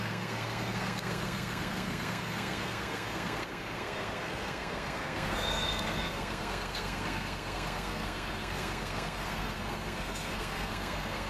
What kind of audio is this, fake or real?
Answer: fake